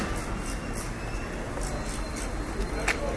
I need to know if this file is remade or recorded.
recorded